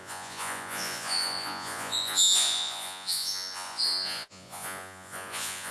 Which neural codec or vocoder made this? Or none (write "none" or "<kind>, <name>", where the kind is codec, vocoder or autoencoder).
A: vocoder, Vocos